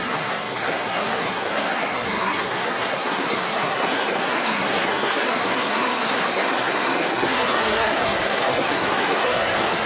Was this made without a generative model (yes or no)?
no